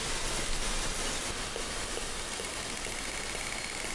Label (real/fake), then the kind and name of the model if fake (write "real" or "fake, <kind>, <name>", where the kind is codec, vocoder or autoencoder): real